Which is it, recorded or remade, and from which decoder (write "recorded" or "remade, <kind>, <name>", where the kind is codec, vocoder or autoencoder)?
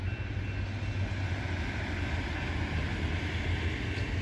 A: recorded